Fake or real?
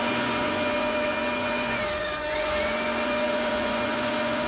fake